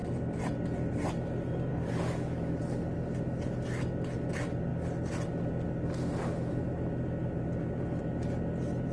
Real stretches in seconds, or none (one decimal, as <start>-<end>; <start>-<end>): 0.0-1.7; 2.6-8.9

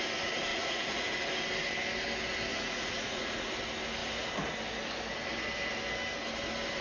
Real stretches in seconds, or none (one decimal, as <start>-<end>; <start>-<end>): 0.0-0.5; 1.3-2.5; 3.5-6.8

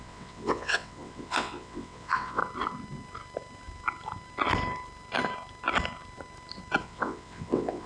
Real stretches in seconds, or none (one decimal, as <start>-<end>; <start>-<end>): 2.4-6.8

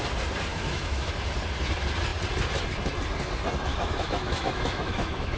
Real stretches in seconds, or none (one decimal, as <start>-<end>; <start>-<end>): 0.0-0.5; 1.1-3.7

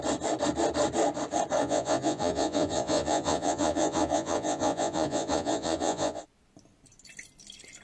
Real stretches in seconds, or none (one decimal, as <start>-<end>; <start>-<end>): 0.0-1.6; 6.2-7.8

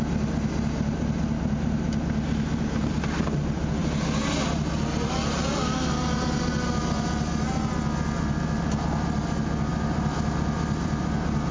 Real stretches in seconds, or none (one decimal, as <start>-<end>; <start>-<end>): 0.0-9.7